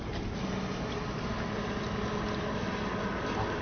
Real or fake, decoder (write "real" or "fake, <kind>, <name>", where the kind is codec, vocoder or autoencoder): real